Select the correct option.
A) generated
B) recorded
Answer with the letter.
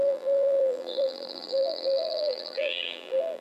A